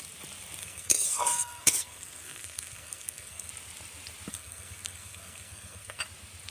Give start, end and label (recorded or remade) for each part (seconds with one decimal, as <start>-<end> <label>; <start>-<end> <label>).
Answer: 0.0-0.6 recorded; 0.6-3.5 remade; 3.5-4.3 recorded; 4.3-6.0 remade; 6.0-6.5 recorded